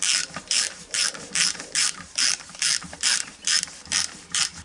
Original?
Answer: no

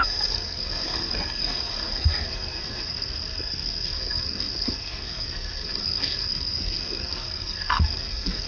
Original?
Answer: no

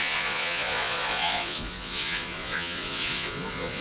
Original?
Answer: no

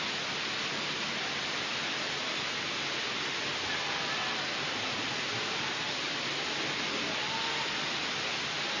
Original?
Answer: yes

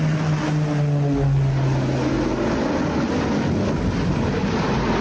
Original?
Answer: yes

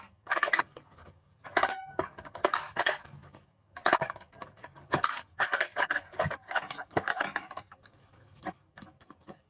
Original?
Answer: no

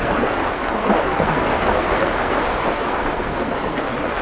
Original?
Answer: no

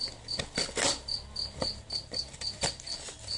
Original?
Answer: yes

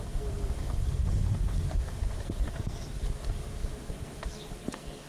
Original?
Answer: no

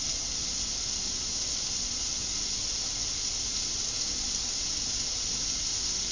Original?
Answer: yes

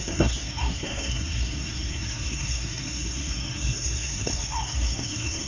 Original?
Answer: no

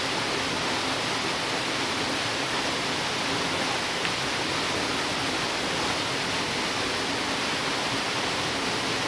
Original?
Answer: yes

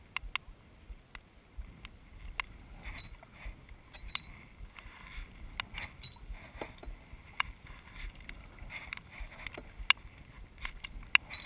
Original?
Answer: yes